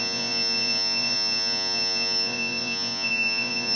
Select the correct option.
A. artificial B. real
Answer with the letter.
A